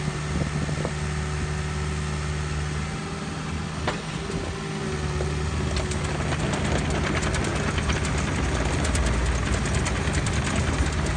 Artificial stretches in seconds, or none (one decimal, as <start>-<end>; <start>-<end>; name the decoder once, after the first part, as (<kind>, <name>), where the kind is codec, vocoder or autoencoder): none